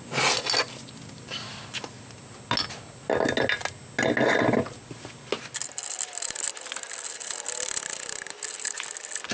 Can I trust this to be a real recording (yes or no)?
yes